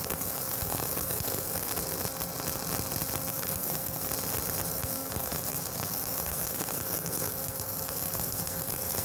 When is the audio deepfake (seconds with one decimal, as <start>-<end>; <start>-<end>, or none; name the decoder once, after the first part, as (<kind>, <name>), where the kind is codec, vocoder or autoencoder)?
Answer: 0.0-1.7 (codec, SNAC); 3.3-4.1; 4.7-9.0